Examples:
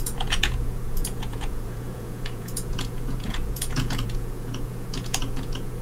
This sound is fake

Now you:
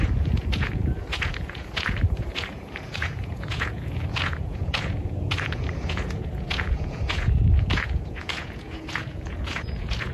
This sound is fake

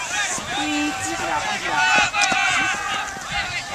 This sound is real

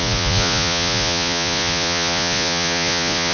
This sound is fake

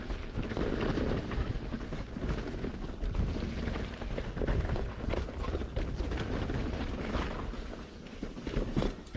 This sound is real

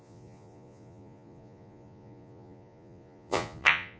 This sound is fake